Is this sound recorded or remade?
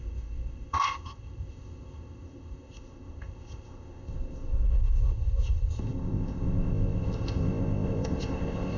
remade